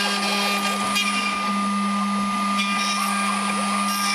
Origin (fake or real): real